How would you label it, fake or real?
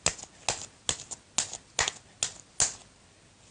real